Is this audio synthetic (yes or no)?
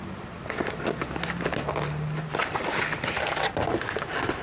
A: no